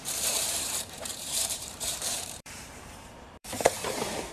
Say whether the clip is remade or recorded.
remade